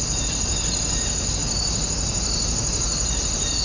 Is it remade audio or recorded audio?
recorded